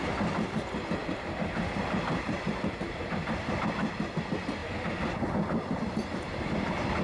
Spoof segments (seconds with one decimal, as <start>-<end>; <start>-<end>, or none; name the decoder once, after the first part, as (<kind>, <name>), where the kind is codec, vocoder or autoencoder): 1.0-3.5 (vocoder, BigVGAN v2)